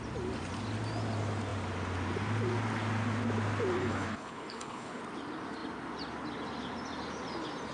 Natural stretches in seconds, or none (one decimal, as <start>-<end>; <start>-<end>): 0.0-3.8; 5.0-7.7